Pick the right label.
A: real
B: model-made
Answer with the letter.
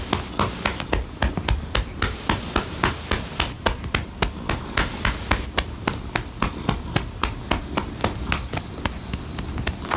A